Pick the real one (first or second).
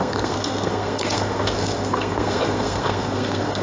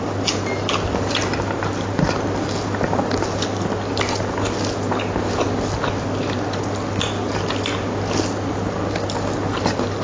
second